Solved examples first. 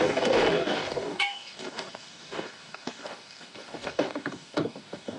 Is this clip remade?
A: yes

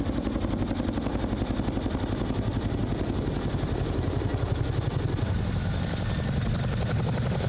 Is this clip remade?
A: no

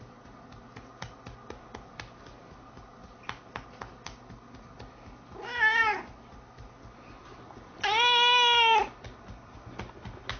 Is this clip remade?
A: no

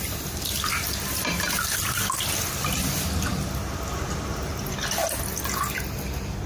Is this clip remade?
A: no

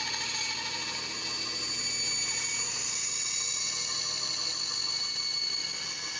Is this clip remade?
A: no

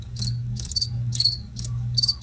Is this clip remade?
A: yes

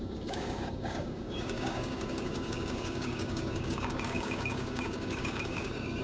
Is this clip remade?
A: yes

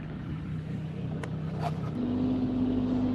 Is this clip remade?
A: yes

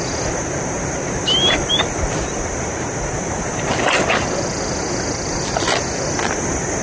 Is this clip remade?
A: no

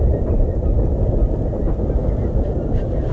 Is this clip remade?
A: no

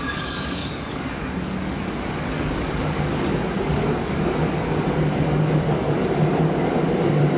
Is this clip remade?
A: yes